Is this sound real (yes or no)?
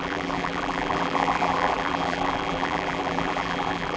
no